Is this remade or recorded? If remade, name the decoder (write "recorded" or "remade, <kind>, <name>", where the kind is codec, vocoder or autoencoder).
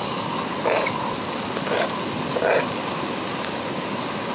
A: recorded